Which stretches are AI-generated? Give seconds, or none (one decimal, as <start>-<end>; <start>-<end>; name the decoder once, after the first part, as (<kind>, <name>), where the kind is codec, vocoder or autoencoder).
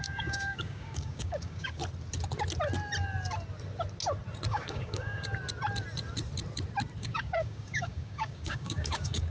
0.0-1.8 (codec, DAC); 4.5-5.3; 7.0-9.3